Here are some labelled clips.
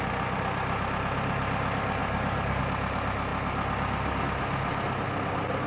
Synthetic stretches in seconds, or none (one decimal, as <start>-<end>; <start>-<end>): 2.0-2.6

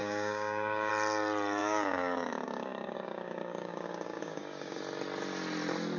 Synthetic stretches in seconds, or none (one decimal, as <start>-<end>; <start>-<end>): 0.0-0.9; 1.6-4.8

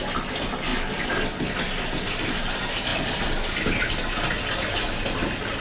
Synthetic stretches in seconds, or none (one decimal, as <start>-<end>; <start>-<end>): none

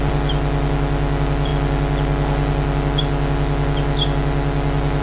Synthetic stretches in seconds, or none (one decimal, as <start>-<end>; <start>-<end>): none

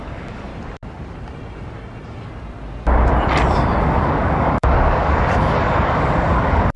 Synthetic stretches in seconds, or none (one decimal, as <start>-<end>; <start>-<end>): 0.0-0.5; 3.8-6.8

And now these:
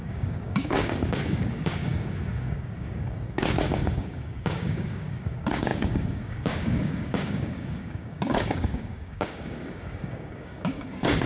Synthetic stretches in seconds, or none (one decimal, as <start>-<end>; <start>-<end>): 0.0-11.3

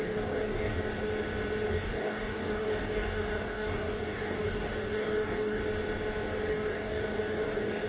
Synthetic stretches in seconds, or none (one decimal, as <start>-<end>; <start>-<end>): 0.0-0.8; 1.7-5.6; 6.5-7.9